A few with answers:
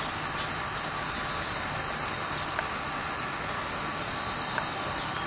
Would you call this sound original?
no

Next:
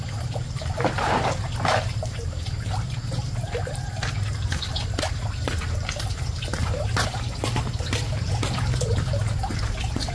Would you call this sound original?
no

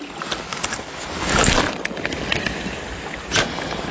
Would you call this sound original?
yes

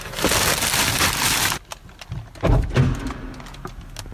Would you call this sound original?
yes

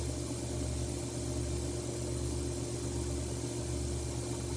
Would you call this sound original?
yes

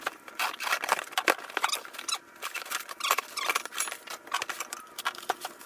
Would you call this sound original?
no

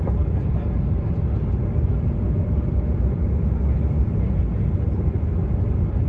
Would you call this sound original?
yes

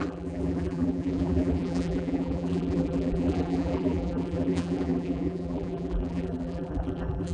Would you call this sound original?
no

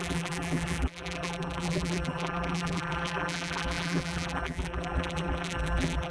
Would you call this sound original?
no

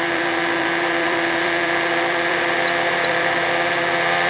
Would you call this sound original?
no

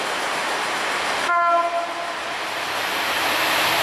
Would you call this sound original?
yes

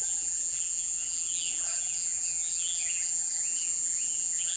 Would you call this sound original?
no